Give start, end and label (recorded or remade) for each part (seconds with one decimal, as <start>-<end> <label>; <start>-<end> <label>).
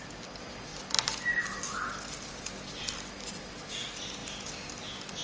0.0-5.2 recorded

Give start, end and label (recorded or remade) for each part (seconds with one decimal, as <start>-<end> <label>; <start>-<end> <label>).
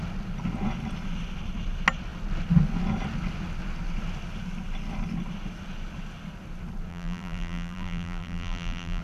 0.0-6.9 recorded; 6.9-9.0 remade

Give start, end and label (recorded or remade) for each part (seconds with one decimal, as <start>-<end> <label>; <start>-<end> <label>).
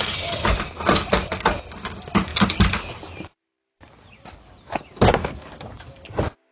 0.0-6.5 recorded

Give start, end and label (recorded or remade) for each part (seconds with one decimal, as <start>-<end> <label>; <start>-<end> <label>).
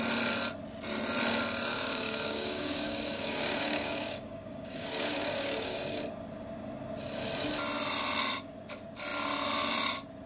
0.0-1.7 recorded; 1.7-6.0 remade; 6.0-10.3 recorded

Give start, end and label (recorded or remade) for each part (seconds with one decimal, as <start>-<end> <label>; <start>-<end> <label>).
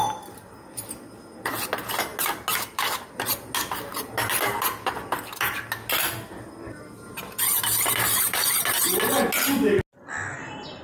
0.0-10.8 recorded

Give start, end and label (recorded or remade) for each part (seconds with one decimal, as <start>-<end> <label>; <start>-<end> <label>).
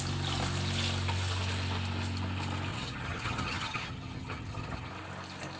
0.0-2.7 recorded; 2.7-4.9 remade; 4.9-5.6 recorded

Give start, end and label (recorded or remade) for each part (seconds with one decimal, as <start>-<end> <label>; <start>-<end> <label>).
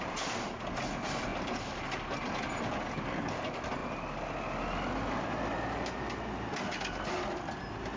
0.0-8.0 recorded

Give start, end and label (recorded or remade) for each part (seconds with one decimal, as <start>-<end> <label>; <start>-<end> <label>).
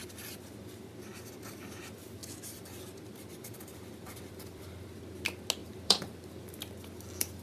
0.0-1.1 recorded; 1.1-1.8 remade; 1.8-2.2 recorded; 2.2-5.0 remade; 5.0-5.6 recorded; 5.6-6.4 remade; 6.4-7.4 recorded